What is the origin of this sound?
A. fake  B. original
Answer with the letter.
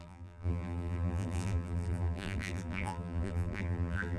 A